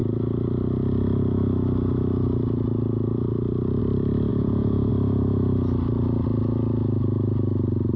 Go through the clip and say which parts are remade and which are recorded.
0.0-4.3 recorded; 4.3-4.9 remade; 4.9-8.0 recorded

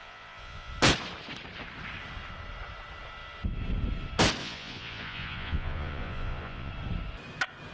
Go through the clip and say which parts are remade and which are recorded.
0.0-0.7 remade; 0.7-4.4 recorded; 4.4-6.7 remade; 6.7-7.7 recorded

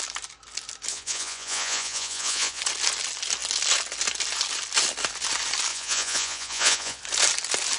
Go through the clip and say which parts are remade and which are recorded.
0.0-0.9 recorded; 0.9-2.6 remade; 2.6-5.7 recorded; 5.7-7.0 remade; 7.0-7.8 recorded

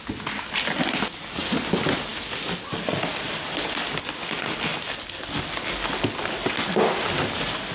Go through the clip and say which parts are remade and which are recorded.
0.0-7.7 recorded

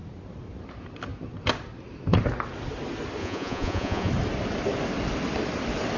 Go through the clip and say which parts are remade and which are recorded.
0.0-3.2 recorded; 3.2-4.1 remade; 4.1-6.0 recorded

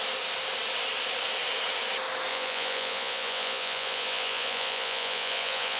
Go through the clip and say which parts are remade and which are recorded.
0.0-2.3 recorded; 2.3-5.8 remade